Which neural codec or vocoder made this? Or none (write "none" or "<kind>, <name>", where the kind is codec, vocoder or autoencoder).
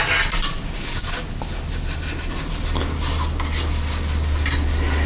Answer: none